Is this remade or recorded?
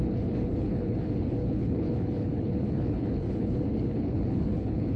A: remade